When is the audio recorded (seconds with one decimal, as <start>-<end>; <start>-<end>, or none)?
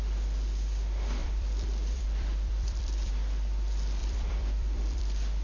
0.0-1.2; 3.1-4.0; 5.0-5.4